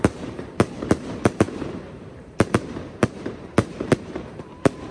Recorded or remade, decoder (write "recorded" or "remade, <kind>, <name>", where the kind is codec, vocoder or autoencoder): remade, vocoder, BigVGAN v2